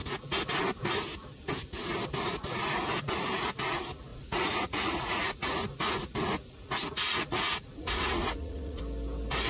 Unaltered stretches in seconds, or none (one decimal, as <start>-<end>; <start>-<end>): 0.0-4.1; 8.8-9.5